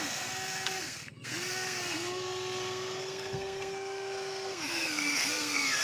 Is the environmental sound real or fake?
fake